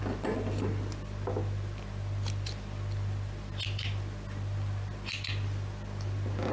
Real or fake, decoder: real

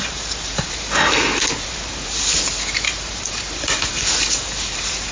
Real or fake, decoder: fake, vocoder, BigVGAN v2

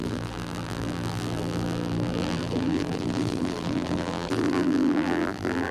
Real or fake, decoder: fake, vocoder, BigVGAN v2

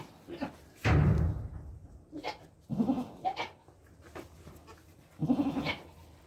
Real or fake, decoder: real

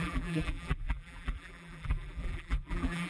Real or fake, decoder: fake, vocoder, BigVGAN v2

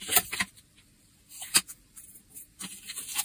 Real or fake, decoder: fake, vocoder, BigVGAN v2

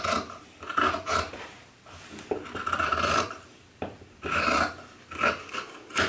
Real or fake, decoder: real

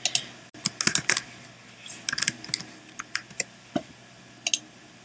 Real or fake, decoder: real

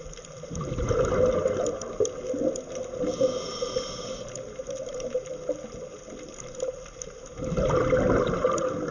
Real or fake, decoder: real